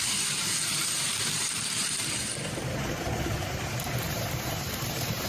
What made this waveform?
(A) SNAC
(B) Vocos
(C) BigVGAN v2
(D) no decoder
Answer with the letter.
C